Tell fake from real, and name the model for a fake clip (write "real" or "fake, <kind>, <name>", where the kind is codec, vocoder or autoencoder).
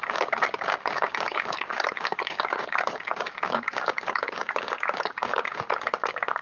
fake, codec, DAC